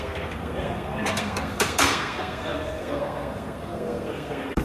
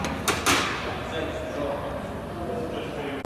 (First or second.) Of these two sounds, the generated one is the first